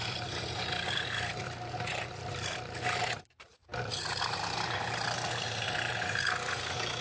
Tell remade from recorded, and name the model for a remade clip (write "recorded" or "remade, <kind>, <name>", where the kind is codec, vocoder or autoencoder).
remade, vocoder, BigVGAN v2